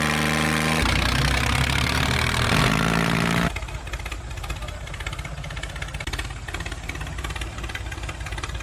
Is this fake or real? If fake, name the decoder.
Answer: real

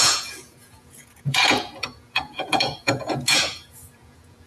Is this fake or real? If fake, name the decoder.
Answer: fake, vocoder, Vocos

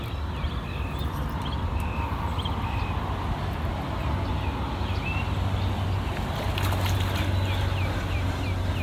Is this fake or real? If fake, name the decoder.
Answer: real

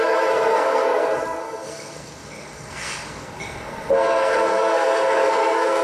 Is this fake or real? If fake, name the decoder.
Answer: fake, codec, SNAC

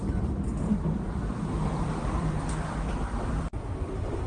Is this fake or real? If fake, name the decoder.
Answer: fake, vocoder, BigVGAN v2